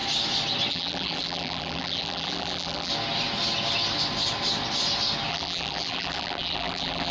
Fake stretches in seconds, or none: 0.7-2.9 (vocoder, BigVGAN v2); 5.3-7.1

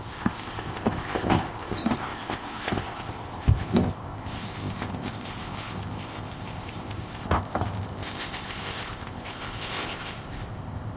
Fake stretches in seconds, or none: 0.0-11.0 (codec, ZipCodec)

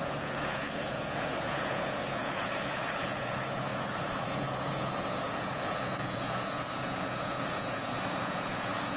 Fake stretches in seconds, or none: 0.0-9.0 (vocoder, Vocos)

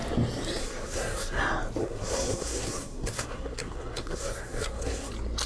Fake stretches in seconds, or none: 0.6-1.4 (codec, SNAC); 1.8-5.1